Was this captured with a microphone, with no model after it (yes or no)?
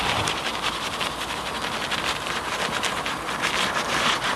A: yes